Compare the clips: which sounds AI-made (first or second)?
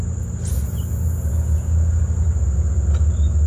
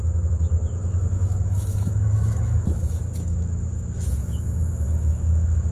second